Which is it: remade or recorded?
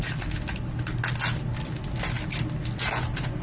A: recorded